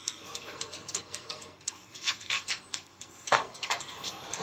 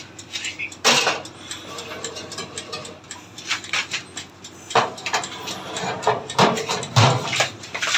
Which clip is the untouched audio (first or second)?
second